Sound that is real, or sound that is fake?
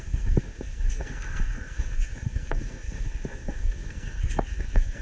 fake